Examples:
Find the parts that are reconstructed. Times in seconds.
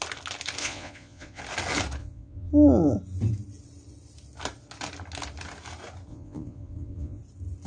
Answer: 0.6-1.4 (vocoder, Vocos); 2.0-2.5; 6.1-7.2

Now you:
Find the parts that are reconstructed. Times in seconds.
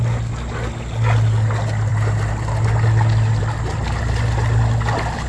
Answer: none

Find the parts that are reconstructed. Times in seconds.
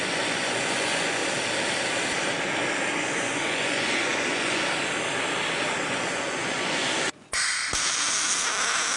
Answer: 0.0-1.2 (vocoder, Vocos); 2.9-4.6; 5.9-7.6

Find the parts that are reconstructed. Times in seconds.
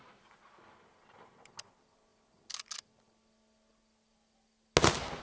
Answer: none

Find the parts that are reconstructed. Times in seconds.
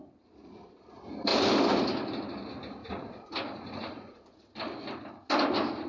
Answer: 2.8-4.4 (vocoder, Vocos)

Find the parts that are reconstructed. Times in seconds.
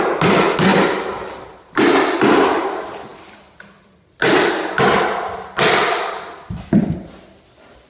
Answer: none